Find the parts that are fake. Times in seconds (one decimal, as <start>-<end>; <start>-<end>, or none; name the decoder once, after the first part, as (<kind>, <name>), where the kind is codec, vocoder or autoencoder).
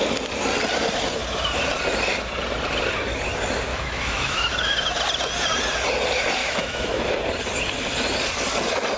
3.7-5.0 (autoencoder, DAC-VAE); 6.4-7.1